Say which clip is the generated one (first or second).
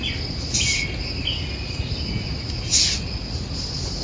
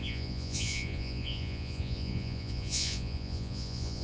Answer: second